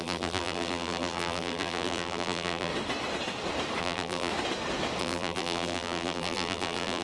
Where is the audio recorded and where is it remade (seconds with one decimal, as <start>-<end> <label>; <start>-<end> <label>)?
0.0-2.7 remade; 2.7-3.8 recorded; 3.8-4.3 remade; 4.3-5.0 recorded; 5.0-7.0 remade